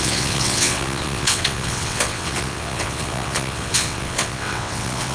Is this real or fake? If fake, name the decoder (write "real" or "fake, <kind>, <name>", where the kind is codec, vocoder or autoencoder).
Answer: fake, vocoder, WaveNeXt